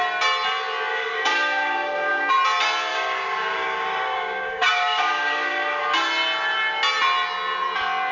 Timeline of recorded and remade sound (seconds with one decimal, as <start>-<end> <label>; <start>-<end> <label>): 0.0-0.9 recorded; 0.9-2.3 remade; 2.3-2.9 recorded; 2.9-5.8 remade; 5.8-8.1 recorded